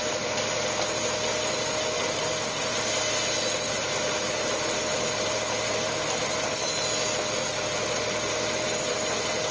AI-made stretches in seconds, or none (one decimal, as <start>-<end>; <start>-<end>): none